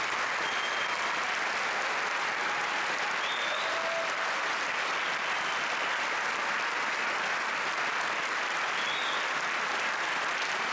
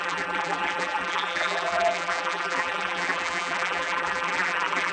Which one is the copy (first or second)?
second